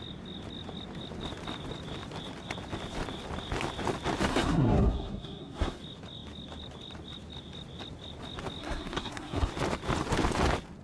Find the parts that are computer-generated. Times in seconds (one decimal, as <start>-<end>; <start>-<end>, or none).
4.3-5.8; 8.6-9.5